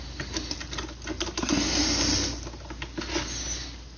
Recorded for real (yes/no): yes